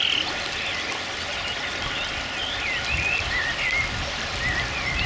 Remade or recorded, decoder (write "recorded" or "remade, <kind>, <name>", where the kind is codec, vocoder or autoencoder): recorded